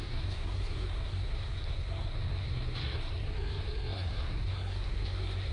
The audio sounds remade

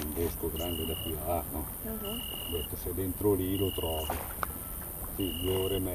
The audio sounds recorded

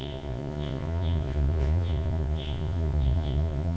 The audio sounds remade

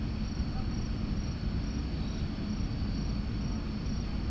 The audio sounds recorded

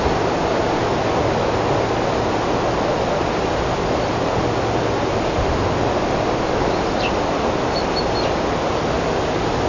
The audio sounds recorded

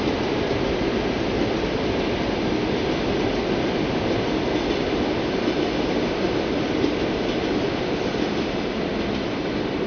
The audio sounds recorded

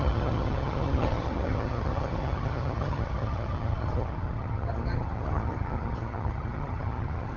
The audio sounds remade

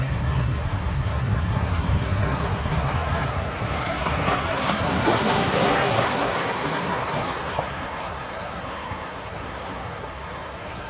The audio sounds remade